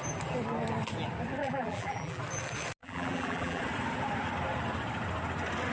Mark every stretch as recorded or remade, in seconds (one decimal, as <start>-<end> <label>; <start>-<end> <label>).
0.0-1.4 recorded; 1.4-2.2 remade; 2.2-2.8 recorded; 2.8-3.6 remade; 3.6-5.7 recorded